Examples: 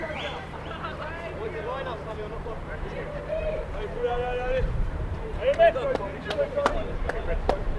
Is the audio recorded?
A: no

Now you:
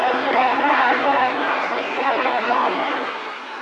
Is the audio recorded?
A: no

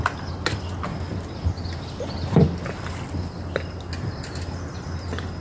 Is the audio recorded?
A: yes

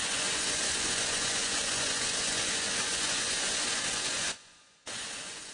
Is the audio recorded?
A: no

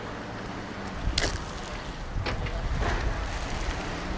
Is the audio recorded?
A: yes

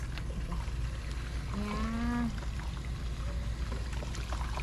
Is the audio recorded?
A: yes